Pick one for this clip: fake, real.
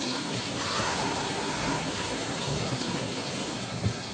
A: fake